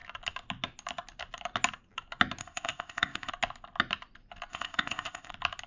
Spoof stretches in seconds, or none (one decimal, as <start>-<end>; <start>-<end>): 2.4-3.3; 4.5-5.3